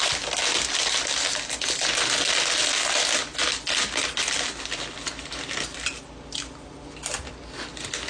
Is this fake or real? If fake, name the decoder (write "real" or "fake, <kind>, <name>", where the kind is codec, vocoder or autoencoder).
real